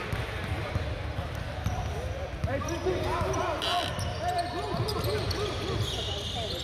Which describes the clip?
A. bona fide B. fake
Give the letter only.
A